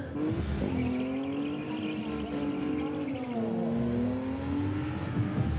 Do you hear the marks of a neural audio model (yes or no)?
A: no